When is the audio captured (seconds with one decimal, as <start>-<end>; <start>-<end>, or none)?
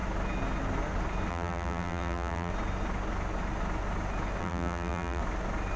0.0-1.3; 2.5-4.4; 5.2-5.8